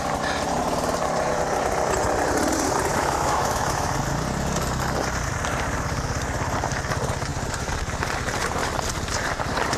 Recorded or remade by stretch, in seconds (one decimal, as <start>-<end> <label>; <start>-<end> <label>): 0.0-2.9 recorded; 2.9-3.9 remade; 3.9-9.8 recorded